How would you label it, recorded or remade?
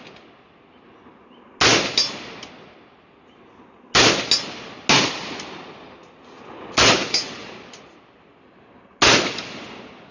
recorded